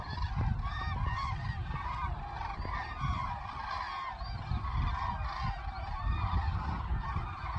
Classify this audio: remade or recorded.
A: recorded